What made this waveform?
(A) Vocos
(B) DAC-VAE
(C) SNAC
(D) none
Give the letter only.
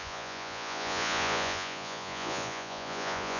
A